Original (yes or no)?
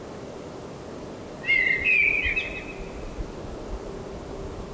yes